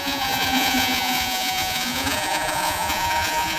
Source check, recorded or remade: remade